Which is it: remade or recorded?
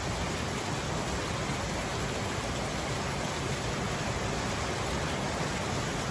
recorded